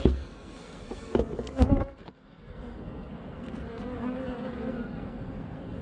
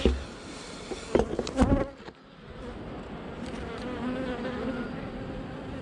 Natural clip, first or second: second